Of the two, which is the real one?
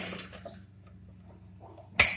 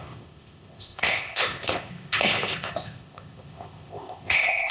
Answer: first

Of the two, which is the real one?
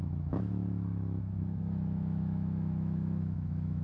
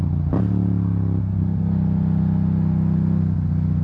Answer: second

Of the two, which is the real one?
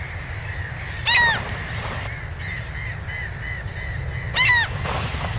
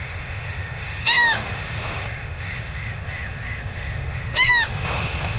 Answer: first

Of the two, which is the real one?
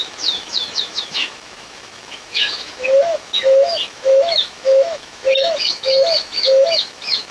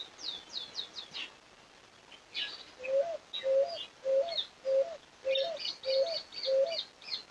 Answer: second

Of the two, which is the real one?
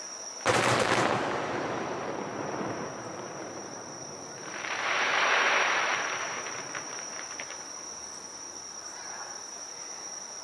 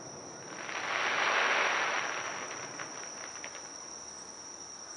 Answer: second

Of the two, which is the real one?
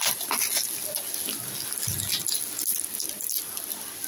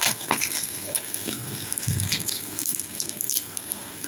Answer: first